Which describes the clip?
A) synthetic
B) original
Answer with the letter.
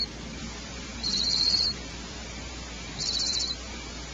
A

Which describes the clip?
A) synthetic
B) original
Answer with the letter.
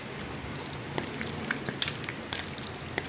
B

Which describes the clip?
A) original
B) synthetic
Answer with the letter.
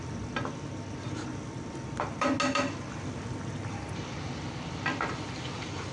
A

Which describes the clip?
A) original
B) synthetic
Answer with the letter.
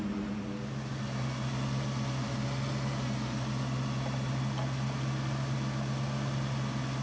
A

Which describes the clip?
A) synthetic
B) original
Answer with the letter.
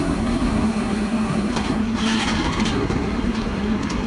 A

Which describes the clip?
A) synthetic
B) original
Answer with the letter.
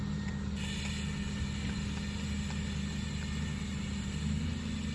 B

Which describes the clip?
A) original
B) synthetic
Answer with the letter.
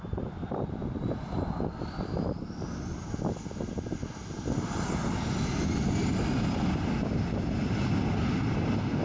A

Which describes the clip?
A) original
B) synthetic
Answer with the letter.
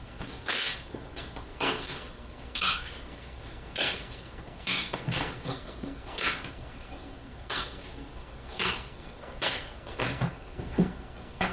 B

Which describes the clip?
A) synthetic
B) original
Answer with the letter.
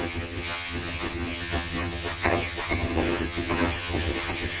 A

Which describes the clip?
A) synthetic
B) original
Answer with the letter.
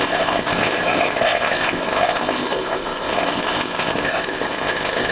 A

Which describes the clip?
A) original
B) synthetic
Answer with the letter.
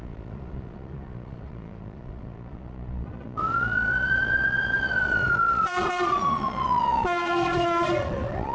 B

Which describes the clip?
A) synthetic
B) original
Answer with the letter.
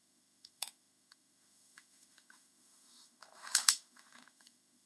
A